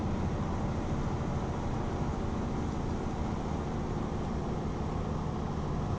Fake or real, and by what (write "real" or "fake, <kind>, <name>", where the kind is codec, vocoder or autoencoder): real